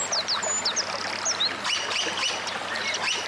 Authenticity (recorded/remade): recorded